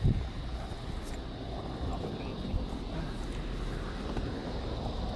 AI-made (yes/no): no